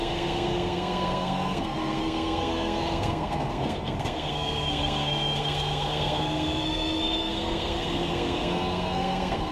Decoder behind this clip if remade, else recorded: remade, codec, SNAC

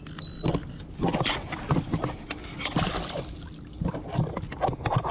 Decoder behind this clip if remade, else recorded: recorded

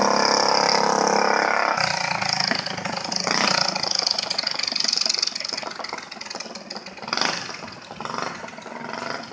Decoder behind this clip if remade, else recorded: recorded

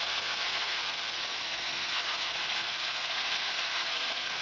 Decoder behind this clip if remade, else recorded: remade, codec, SNAC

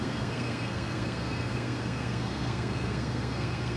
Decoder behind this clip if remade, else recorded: remade, codec, SNAC